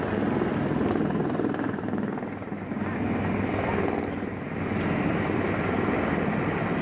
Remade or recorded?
recorded